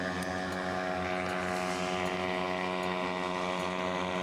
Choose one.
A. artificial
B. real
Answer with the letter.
B